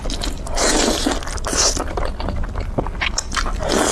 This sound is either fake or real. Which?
real